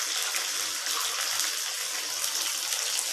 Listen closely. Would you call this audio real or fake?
real